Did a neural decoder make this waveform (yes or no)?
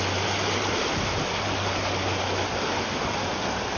no